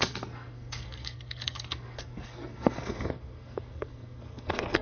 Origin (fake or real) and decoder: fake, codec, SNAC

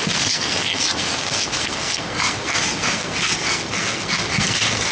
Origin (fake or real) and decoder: fake, codec, SNAC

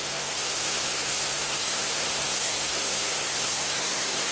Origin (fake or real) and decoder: fake, codec, SNAC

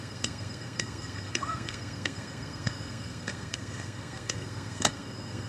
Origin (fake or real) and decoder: fake, codec, SNAC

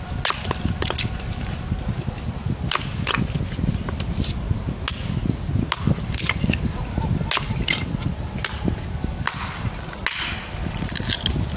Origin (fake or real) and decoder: real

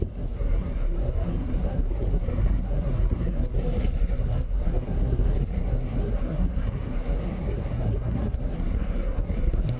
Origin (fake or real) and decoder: fake, codec, SNAC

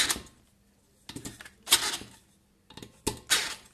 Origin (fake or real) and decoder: real